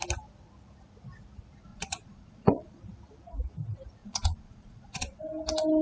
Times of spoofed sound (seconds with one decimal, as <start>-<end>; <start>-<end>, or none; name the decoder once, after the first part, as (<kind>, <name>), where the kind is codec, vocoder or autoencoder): 1.7-2.8 (vocoder, Vocos); 4.0-5.3